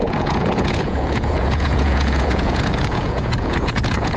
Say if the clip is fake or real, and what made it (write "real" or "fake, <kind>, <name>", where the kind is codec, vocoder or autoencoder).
fake, vocoder, Vocos